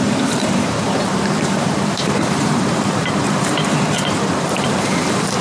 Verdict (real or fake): fake